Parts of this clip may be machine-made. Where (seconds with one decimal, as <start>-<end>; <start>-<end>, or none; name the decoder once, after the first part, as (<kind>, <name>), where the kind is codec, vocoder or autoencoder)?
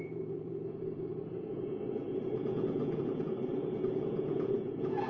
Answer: 0.0-5.1 (vocoder, Vocos)